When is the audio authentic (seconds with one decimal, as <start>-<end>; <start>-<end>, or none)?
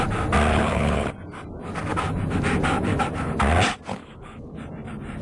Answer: 0.0-0.5; 1.1-3.9; 4.6-5.2